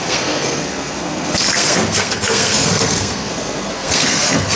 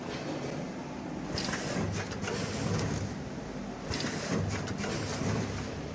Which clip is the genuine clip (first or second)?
second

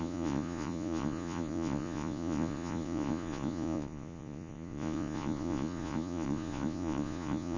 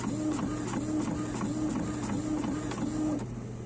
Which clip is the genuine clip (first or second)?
second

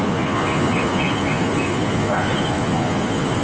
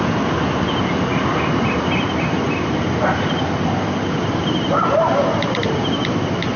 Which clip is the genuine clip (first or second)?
second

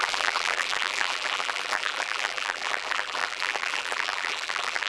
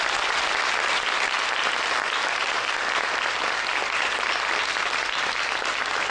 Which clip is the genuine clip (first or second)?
second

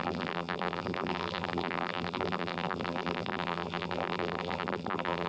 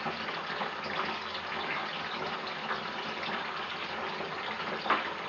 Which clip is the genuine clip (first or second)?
second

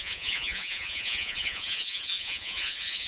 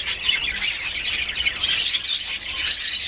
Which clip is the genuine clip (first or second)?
second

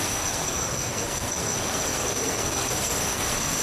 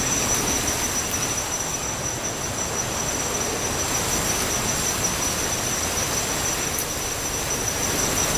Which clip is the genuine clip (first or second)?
second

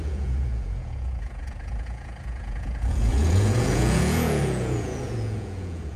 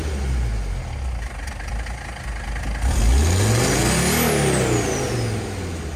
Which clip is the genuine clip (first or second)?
second